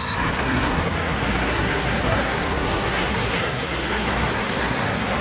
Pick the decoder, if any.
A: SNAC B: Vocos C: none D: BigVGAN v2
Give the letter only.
A